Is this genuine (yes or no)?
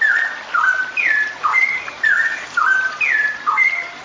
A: yes